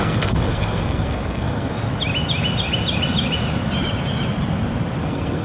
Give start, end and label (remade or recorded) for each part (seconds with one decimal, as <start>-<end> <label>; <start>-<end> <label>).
0.0-1.8 remade; 1.8-5.0 recorded; 5.0-5.4 remade